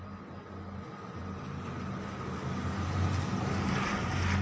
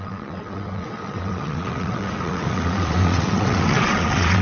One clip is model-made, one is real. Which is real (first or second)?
first